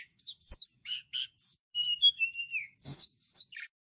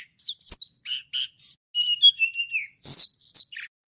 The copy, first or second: first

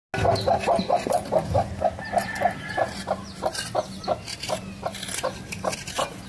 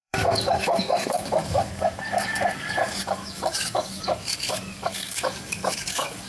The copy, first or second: second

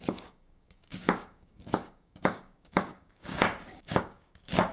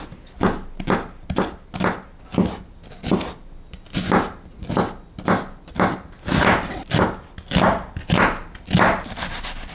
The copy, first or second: first